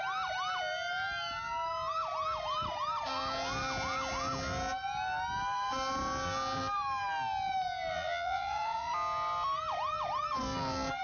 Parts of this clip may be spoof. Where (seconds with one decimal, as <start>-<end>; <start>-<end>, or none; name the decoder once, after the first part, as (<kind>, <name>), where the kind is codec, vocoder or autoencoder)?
7.9-8.9 (vocoder, Vocos)